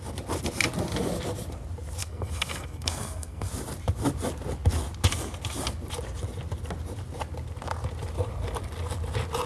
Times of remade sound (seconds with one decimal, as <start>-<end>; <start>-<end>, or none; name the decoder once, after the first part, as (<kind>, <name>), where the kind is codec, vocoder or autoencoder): 2.0-3.5 (codec, SNAC)